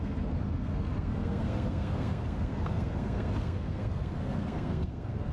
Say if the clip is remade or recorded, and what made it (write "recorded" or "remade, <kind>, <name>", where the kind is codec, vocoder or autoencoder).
remade, codec, SNAC